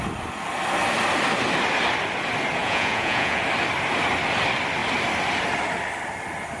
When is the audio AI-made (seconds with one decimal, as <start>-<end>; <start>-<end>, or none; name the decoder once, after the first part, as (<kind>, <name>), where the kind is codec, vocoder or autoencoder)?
2.6-3.4 (vocoder, Vocos)